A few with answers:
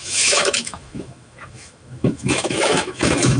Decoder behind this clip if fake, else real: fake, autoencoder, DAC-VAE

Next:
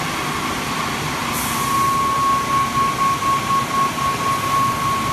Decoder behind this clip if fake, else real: real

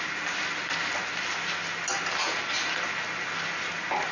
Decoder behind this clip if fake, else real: real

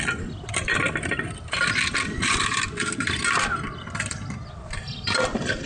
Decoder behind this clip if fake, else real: fake, vocoder, BigVGAN v2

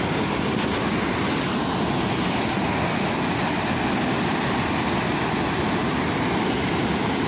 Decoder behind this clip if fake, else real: real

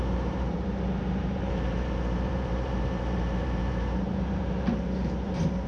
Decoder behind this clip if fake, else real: fake, vocoder, BigVGAN v2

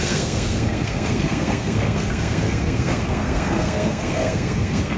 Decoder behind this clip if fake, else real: fake, codec, SNAC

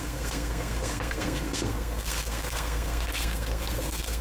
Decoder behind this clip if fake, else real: fake, codec, SNAC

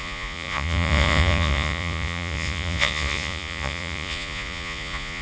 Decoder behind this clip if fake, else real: fake, vocoder, Vocos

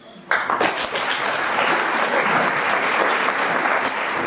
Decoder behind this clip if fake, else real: real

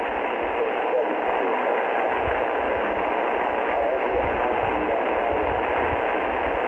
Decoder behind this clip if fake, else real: real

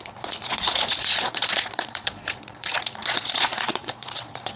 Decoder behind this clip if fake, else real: fake, vocoder, Vocos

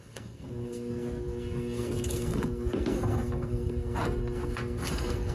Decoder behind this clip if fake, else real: fake, codec, SNAC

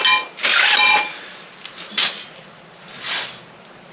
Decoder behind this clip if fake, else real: real